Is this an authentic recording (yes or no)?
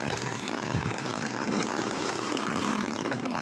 no